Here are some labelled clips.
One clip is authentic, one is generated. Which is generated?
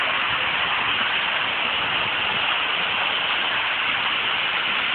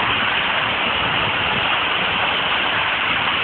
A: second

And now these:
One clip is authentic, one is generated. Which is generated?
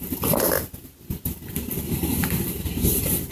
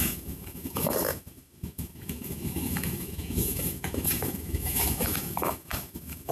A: second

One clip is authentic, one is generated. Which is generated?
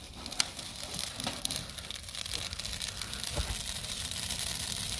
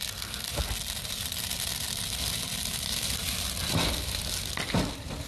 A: first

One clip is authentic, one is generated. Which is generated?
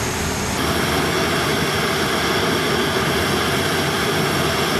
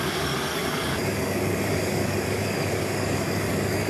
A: second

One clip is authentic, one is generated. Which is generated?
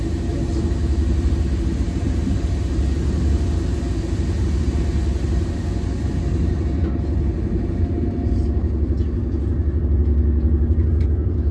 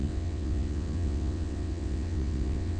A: second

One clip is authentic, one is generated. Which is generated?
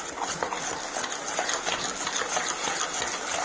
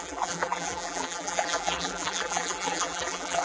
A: second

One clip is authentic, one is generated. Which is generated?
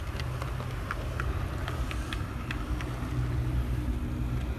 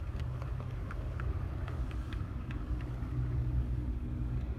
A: second